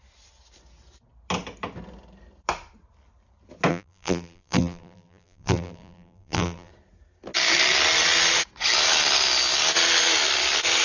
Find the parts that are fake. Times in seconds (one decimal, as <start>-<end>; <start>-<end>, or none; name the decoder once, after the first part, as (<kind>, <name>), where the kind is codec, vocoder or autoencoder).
3.7-6.7 (vocoder, BigVGAN v2)